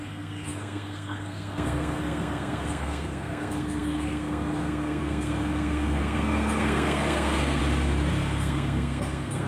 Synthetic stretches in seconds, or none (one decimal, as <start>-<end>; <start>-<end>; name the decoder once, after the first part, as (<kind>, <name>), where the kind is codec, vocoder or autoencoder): 0.0-7.6 (codec, SNAC); 8.1-9.5